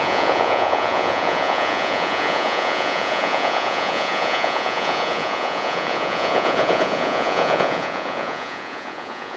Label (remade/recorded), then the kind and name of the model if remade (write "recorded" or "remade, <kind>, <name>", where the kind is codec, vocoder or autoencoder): remade, vocoder, Vocos